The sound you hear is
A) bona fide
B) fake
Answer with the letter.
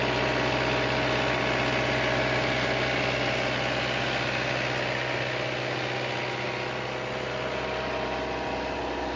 A